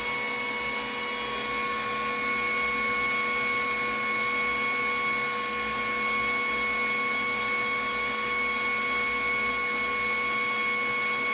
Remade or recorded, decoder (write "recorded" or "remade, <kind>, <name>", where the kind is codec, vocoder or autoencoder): recorded